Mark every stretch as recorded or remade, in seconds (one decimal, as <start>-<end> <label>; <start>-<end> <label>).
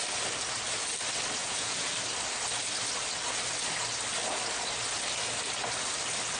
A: 0.0-1.4 recorded; 1.4-1.9 remade; 1.9-6.4 recorded